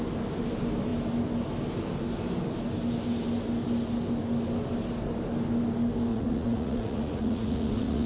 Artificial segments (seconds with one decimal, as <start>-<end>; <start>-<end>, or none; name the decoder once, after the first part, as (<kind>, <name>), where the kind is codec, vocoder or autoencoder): 6.1-8.1 (vocoder, Vocos)